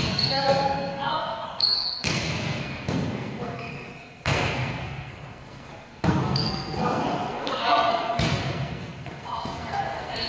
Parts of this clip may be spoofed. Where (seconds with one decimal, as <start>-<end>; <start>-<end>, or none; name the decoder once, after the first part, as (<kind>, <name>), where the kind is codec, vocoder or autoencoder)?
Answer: 0.0-10.3 (codec, SNAC)